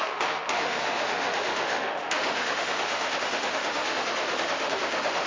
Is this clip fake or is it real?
fake